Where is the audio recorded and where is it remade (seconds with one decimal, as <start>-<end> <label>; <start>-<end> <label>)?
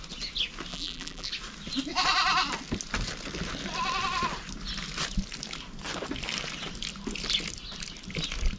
0.0-0.7 recorded; 0.7-1.3 remade; 1.3-8.6 recorded